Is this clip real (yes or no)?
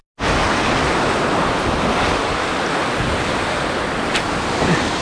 yes